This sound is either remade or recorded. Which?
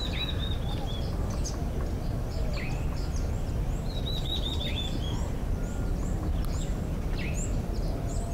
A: recorded